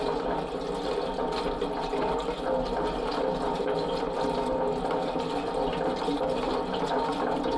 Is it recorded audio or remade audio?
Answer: recorded